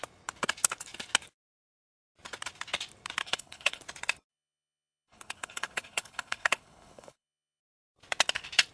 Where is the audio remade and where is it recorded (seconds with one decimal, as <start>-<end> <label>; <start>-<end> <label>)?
0.0-3.2 recorded; 3.2-3.8 remade; 3.8-4.3 recorded; 4.3-7.6 remade; 7.6-8.7 recorded